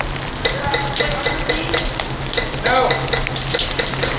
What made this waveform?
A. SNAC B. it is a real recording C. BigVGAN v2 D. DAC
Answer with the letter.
B